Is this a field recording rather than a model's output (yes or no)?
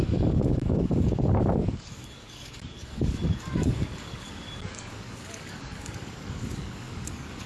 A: no